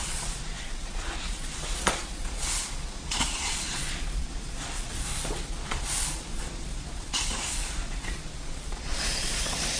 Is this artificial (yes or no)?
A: yes